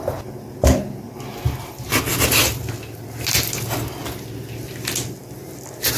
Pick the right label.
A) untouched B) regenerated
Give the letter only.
A